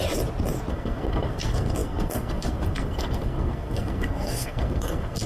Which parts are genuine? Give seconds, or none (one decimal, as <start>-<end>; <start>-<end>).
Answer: 0.0-0.7